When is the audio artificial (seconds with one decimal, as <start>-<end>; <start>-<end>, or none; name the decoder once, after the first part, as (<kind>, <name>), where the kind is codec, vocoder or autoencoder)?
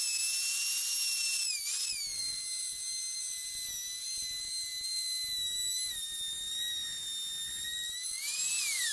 2.1-2.7 (vocoder, BigVGAN v2)